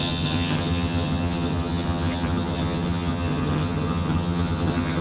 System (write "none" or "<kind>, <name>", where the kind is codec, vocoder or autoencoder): vocoder, HiFi-GAN